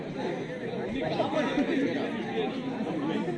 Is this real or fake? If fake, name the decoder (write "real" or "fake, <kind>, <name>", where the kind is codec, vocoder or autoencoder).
real